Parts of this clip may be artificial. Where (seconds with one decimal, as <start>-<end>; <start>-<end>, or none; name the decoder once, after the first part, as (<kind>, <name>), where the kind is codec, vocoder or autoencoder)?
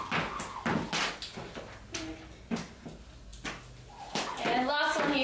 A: none